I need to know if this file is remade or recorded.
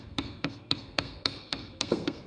remade